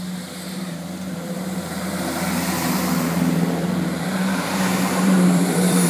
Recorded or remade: remade